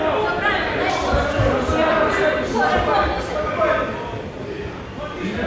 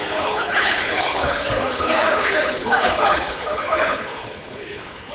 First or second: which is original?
first